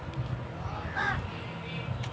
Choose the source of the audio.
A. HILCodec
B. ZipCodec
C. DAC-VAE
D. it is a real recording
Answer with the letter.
D